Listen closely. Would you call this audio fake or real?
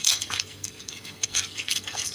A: fake